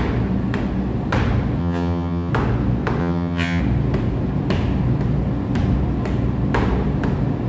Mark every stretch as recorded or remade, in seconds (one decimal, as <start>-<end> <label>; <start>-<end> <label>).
0.0-1.6 recorded; 1.6-2.3 remade; 2.3-3.0 recorded; 3.0-3.6 remade; 3.6-7.5 recorded